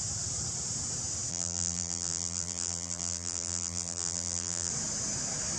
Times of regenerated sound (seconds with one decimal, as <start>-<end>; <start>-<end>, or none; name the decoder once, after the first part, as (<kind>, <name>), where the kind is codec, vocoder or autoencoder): 1.3-4.7 (vocoder, BigVGAN v2)